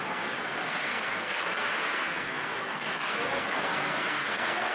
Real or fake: fake